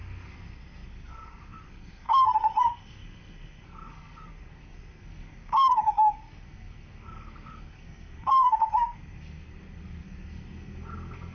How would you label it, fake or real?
fake